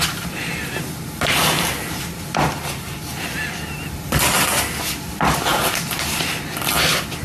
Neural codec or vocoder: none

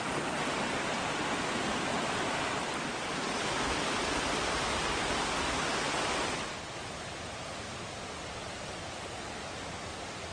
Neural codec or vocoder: none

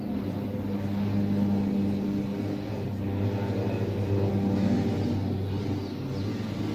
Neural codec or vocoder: none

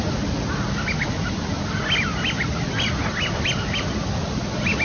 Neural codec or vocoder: none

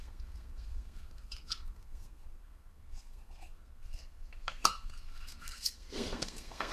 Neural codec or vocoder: codec, SNAC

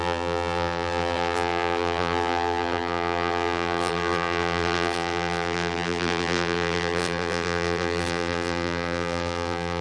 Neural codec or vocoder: vocoder, BigVGAN v2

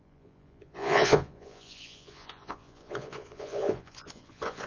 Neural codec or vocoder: vocoder, Vocos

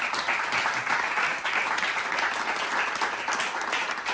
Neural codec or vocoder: vocoder, BigVGAN v2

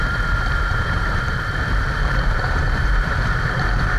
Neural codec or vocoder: vocoder, BigVGAN v2